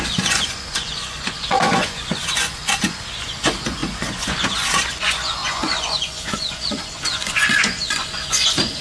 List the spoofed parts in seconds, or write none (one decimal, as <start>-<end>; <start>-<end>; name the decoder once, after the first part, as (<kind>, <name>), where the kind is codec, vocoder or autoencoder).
0.0-8.8 (vocoder, Vocos)